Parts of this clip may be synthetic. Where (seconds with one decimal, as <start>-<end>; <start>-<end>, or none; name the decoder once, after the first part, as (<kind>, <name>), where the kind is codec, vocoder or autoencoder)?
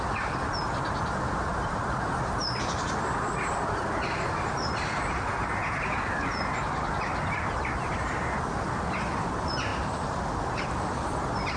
none